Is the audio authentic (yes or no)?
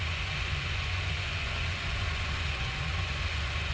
no